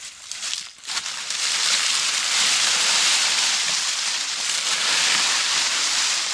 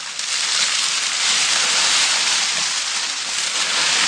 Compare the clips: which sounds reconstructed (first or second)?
first